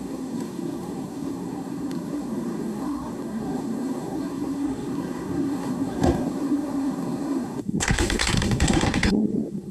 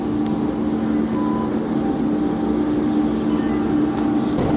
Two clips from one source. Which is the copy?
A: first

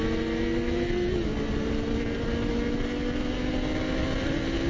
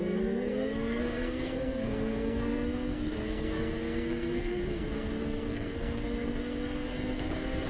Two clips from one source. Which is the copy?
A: second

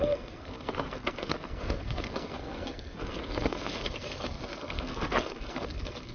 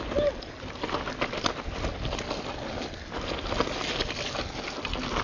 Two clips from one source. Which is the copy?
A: first